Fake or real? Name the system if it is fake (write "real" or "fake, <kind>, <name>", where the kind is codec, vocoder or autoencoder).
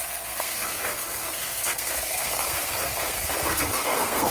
fake, codec, SNAC